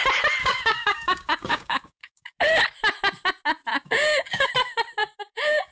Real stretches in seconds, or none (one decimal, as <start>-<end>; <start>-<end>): 0.0-0.4; 2.4-3.7; 4.5-5.0